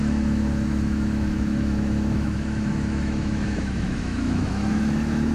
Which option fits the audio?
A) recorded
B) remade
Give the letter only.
B